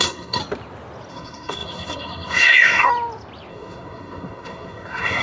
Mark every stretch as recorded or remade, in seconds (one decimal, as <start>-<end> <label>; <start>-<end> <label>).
0.0-0.4 remade; 0.4-1.1 recorded; 1.1-2.9 remade; 2.9-3.5 recorded; 3.5-5.2 remade